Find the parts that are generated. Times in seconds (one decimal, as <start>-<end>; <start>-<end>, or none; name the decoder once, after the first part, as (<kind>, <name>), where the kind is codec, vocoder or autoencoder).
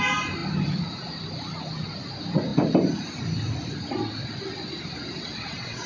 5.2-5.9 (vocoder, WaveNeXt)